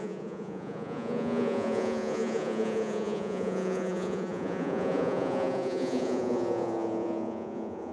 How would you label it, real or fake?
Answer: fake